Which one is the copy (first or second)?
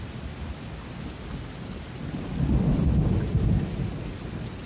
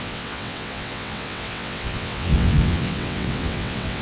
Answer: second